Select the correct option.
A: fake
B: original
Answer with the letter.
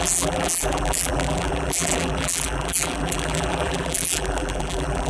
A